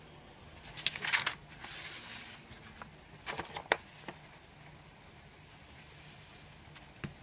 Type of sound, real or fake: real